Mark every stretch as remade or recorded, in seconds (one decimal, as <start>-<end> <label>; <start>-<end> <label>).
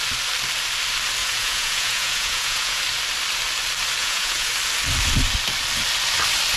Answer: 0.0-1.2 recorded; 1.2-2.8 remade; 2.8-4.0 recorded; 4.0-4.5 remade; 4.5-6.6 recorded